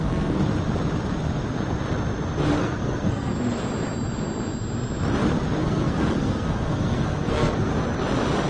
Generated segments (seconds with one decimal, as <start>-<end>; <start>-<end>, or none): 0.0-0.4; 2.6-3.3; 5.6-7.7